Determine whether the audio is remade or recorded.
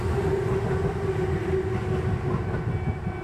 recorded